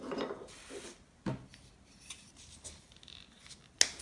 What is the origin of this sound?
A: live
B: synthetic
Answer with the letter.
A